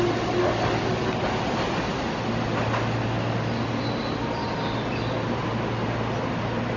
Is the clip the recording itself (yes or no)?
yes